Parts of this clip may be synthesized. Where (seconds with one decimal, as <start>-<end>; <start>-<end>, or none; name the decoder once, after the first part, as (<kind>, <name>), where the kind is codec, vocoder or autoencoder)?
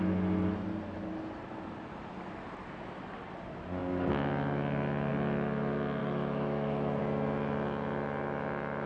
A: 6.0-7.0 (autoencoder, DAC-VAE)